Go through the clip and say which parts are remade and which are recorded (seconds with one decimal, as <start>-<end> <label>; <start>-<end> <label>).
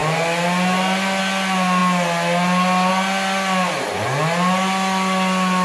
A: 0.0-5.6 recorded